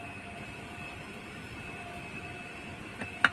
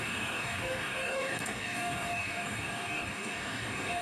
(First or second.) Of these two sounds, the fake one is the second